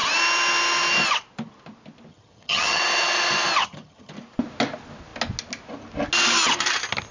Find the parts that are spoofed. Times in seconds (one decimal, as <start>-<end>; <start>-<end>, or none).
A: 2.1-2.8; 3.6-4.1